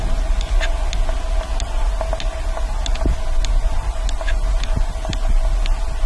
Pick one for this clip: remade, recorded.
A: recorded